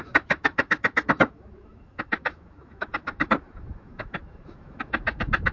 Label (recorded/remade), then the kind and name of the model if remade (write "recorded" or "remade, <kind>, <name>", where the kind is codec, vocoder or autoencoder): remade, autoencoder, DAC-VAE